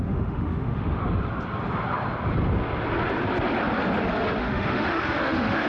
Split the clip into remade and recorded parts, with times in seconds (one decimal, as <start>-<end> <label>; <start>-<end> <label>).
0.0-1.0 remade; 1.0-4.4 recorded; 4.4-5.7 remade